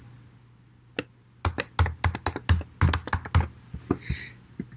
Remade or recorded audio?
recorded